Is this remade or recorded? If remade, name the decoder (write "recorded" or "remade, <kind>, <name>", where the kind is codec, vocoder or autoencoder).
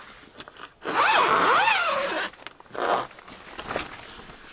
recorded